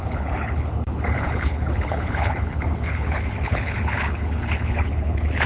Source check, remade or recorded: remade